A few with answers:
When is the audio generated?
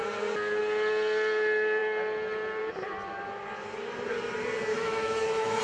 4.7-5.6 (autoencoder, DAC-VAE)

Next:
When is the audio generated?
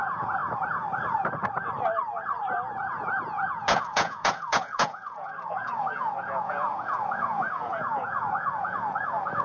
0.0-0.4 (vocoder, Vocos); 2.9-9.4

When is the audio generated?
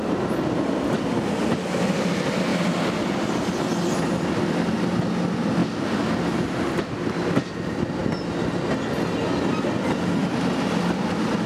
none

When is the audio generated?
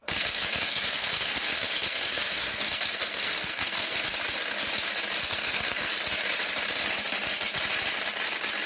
0.0-4.1 (codec, SNAC); 5.2-5.9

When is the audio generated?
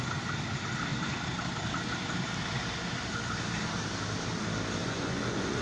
4.8-5.6 (vocoder, Vocos)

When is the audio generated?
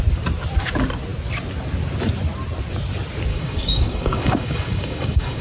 3.3-5.4 (codec, DAC)